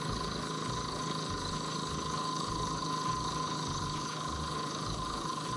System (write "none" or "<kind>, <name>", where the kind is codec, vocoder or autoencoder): codec, HILCodec